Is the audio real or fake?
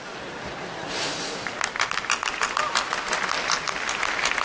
real